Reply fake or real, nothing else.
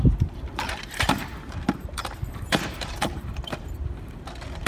fake